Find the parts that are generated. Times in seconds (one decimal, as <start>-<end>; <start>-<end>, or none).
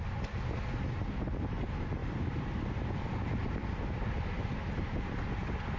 2.0-5.8